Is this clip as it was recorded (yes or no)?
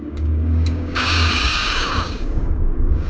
no